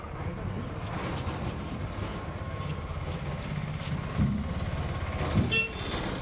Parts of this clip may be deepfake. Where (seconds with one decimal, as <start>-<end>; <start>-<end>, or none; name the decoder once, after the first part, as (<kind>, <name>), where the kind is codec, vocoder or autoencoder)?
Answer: none